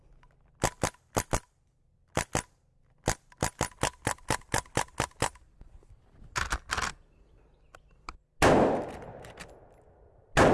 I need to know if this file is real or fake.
real